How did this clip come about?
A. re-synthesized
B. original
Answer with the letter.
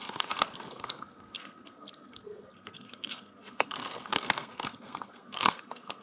A